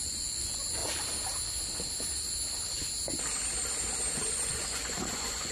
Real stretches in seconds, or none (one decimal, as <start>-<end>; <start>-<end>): 0.8-4.1

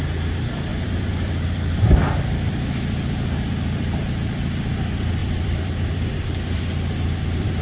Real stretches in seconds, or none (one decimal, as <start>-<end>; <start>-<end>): 0.0-0.7; 3.5-5.2; 6.6-7.6

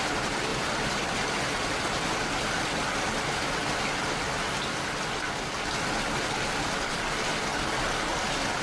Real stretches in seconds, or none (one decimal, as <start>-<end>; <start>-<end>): 0.0-8.6

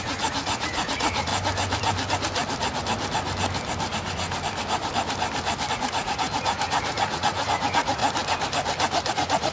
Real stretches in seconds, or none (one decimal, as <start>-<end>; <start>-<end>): 1.3-5.7; 8.0-9.1